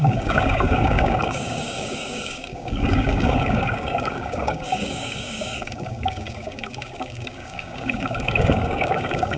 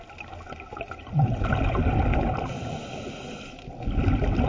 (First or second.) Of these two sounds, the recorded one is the second